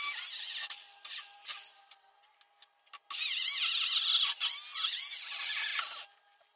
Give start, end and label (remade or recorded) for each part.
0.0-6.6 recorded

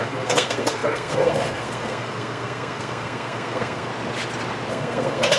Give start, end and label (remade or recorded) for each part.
0.0-3.9 remade; 3.9-4.7 recorded; 4.7-5.4 remade

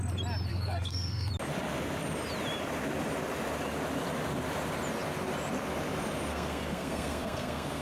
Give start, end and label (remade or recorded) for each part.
0.0-0.5 recorded; 0.5-1.3 remade; 1.3-6.3 recorded; 6.3-7.8 remade

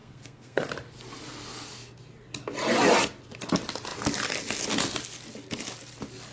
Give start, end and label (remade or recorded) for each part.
0.0-0.7 remade; 0.7-6.3 recorded

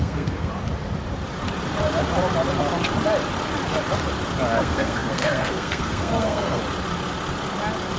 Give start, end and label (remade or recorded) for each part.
0.0-0.5 remade; 0.5-4.6 recorded; 4.6-6.6 remade; 6.6-8.0 recorded

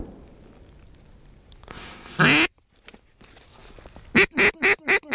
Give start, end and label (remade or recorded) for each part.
0.0-1.7 recorded; 1.7-2.2 remade; 2.2-5.1 recorded